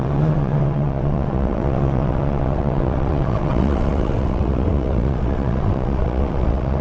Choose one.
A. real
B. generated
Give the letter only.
B